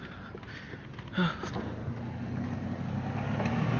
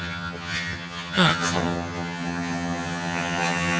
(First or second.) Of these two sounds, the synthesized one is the second